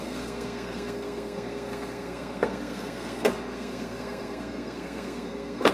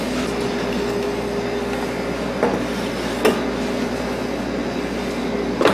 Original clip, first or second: second